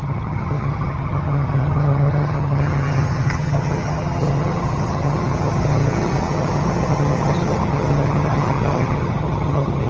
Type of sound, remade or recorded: remade